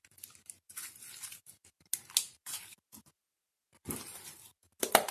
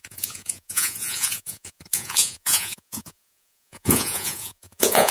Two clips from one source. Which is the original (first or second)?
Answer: first